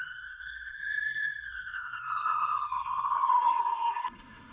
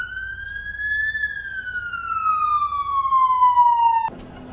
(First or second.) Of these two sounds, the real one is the second